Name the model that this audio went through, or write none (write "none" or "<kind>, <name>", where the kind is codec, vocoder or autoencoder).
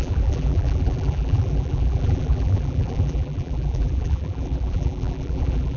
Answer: vocoder, BigVGAN v2